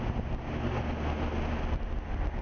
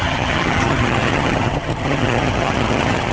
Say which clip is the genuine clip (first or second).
first